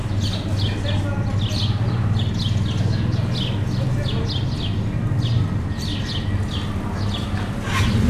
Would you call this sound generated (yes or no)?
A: no